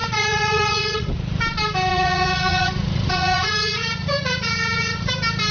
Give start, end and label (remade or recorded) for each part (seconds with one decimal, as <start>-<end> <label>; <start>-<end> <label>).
0.0-1.1 remade; 1.1-1.9 recorded; 1.9-5.1 remade; 5.1-5.5 recorded